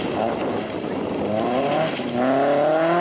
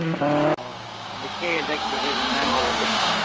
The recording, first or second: first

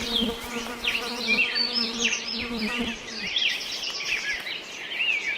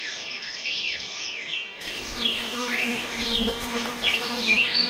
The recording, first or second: first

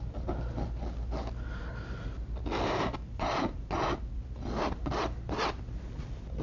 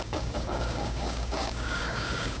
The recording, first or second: first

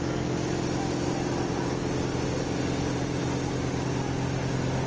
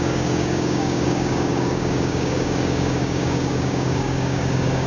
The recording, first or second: first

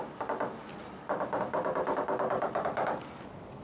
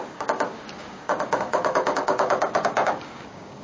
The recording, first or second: first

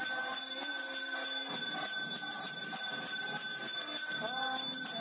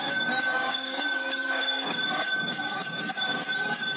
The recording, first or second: first